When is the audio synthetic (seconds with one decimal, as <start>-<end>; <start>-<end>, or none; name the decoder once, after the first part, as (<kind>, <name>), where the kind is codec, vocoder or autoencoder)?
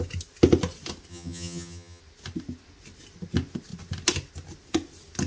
1.1-2.0 (vocoder, HiFi-GAN)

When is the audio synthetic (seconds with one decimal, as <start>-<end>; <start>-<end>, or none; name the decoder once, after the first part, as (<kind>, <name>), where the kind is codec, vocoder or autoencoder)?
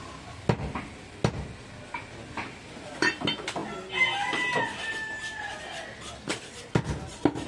none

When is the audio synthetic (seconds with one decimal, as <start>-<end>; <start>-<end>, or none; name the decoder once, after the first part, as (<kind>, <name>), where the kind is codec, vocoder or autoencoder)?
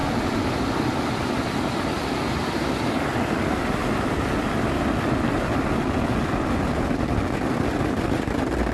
none